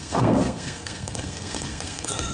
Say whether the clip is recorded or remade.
remade